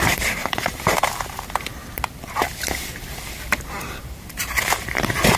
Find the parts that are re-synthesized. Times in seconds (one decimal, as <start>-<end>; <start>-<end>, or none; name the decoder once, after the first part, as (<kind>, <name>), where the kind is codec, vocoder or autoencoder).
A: 0.0-1.7 (vocoder, BigVGAN v2); 2.4-5.4